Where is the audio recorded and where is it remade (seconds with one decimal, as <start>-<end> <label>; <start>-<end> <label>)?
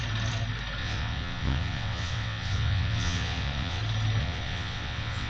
0.0-0.8 recorded; 0.8-3.8 remade; 3.8-4.2 recorded; 4.2-5.3 remade